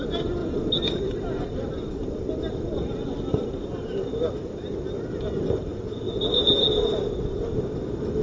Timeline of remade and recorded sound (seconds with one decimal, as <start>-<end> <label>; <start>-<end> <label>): 0.0-8.2 recorded